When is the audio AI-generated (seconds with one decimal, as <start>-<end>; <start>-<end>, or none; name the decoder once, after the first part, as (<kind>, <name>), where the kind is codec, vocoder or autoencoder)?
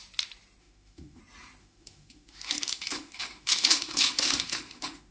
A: 0.6-1.2 (autoencoder, DAC-VAE); 1.6-5.1